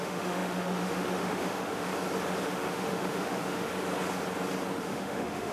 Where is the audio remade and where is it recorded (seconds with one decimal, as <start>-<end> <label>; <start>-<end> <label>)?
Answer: 0.0-1.9 remade; 1.9-2.4 recorded; 2.4-3.7 remade; 3.7-4.8 recorded; 4.8-5.5 remade